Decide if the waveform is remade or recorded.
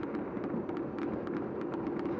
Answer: recorded